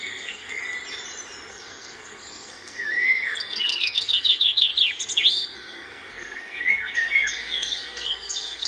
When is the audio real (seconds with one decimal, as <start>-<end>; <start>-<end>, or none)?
0.6-1.5; 4.7-5.3